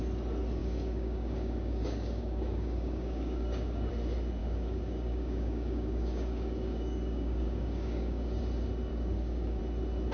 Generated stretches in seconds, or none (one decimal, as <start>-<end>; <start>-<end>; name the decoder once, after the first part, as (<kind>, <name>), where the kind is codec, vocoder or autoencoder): 0.6-3.9 (codec, DAC); 4.4-8.4; 8.9-9.6